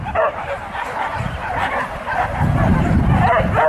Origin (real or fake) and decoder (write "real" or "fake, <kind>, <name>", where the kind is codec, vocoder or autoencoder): real